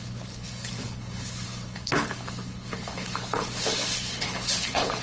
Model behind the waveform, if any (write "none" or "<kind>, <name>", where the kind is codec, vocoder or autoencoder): codec, HILCodec